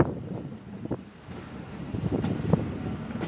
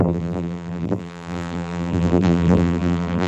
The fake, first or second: second